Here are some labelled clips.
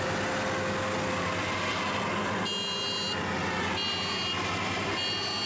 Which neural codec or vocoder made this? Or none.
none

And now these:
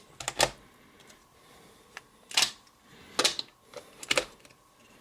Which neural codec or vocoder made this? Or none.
none